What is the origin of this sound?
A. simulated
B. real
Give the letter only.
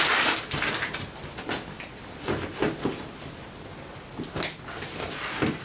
B